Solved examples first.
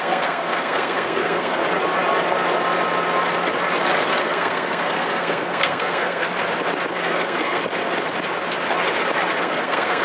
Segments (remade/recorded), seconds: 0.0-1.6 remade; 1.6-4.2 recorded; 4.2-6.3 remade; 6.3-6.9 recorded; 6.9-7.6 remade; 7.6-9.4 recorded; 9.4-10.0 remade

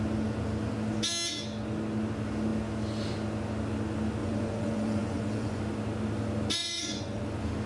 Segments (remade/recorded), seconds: 0.0-4.2 recorded; 4.2-5.6 remade; 5.6-6.6 recorded; 6.6-7.2 remade; 7.2-7.7 recorded